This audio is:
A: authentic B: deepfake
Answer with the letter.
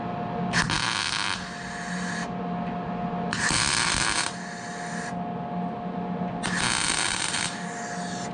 A